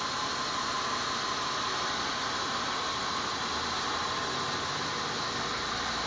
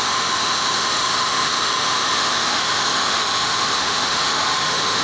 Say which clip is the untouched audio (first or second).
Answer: first